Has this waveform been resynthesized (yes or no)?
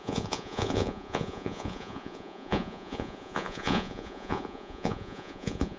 yes